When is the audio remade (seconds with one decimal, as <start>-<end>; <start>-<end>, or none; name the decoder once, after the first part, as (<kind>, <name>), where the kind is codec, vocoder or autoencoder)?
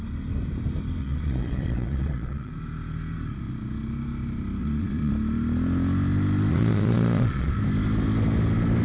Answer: 1.0-2.5 (vocoder, Vocos); 4.6-5.1; 6.5-7.5